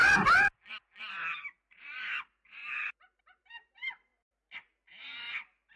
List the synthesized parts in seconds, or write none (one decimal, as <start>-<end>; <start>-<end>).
1.7-2.6; 3.2-4.1